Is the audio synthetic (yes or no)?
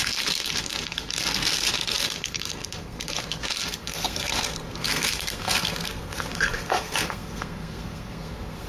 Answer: yes